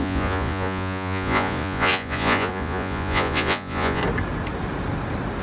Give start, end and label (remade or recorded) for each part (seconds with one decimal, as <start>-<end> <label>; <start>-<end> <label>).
0.0-4.0 remade; 4.0-5.4 recorded